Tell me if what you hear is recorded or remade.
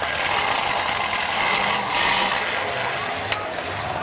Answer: recorded